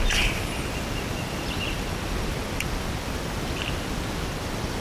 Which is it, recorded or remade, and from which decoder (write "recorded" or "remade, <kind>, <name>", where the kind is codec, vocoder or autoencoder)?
recorded